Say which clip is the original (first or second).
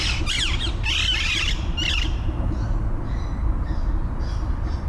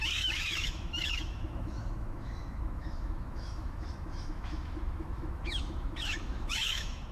first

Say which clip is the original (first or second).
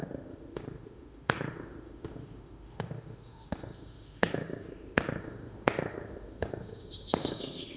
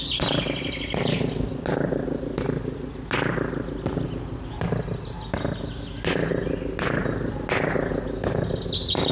second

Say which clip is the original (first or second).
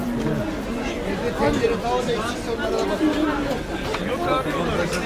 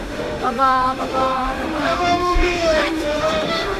first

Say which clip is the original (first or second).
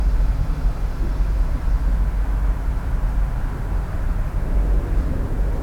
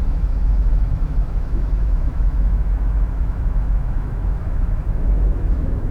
first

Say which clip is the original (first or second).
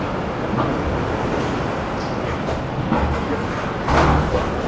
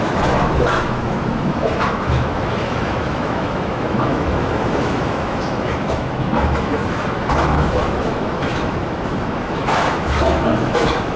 first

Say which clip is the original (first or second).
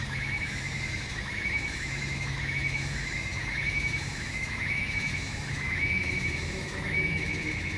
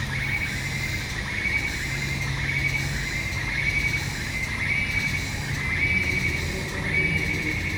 second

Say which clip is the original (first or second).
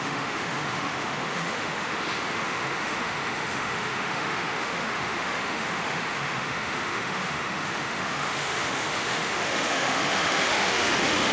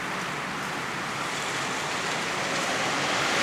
second